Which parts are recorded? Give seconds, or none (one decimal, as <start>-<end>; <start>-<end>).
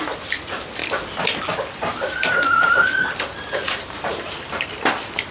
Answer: 0.0-0.8; 1.4-1.9; 4.1-5.3